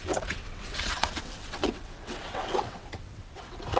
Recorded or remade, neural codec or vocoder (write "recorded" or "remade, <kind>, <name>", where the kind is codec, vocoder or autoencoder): remade, vocoder, WaveNeXt